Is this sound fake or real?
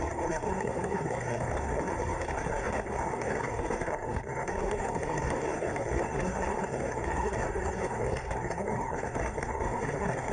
fake